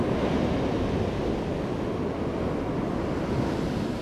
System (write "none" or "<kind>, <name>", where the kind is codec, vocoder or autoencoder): none